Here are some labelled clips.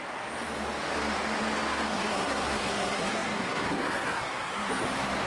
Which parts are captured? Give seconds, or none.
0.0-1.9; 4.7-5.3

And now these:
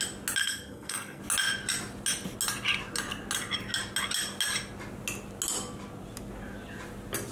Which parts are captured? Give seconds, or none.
0.0-0.4; 1.2-7.3